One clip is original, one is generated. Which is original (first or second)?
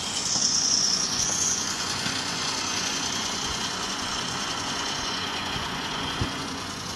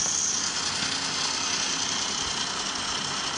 second